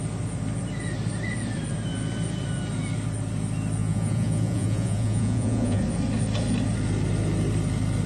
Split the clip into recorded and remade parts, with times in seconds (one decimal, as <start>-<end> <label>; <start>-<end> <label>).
0.0-3.8 recorded; 3.8-5.8 remade; 5.8-8.1 recorded